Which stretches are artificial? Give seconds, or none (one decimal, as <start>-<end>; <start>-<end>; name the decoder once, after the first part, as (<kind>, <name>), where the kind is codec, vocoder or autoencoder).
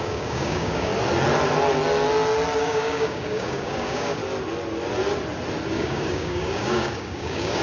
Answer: 0.0-0.9 (codec, DAC); 2.6-4.2; 5.7-7.6